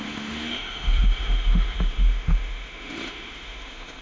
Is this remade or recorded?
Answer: remade